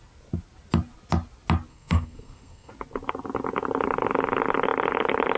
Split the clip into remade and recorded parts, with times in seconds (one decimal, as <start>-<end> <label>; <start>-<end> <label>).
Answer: 0.0-1.7 recorded; 1.7-2.7 remade; 2.7-5.4 recorded